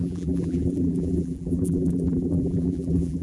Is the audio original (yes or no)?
no